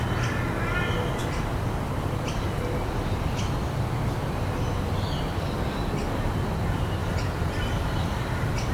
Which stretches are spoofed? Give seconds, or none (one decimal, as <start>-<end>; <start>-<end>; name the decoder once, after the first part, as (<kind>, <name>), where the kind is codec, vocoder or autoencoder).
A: 1.2-4.9 (vocoder, BigVGAN v2); 7.0-7.7